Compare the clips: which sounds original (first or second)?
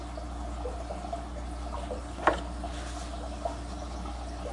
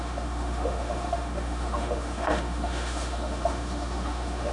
first